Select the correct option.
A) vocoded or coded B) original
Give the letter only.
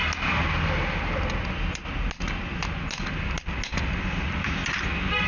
B